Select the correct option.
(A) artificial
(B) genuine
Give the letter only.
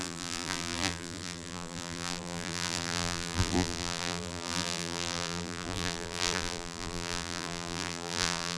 A